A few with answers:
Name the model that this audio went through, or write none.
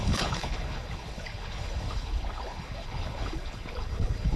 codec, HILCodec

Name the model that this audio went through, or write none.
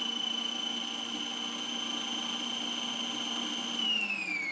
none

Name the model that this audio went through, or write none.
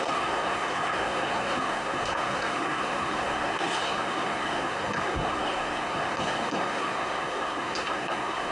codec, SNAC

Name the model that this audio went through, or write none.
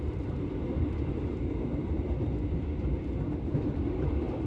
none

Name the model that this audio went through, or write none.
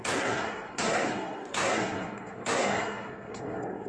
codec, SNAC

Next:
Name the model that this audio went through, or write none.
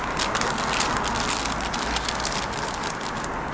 none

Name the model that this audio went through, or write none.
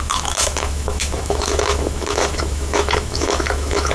autoencoder, DAC-VAE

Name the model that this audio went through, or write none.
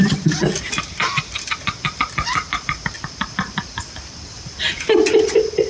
vocoder, BigVGAN v2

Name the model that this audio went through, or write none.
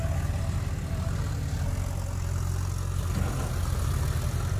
none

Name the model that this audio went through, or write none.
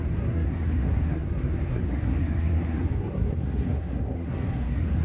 codec, SNAC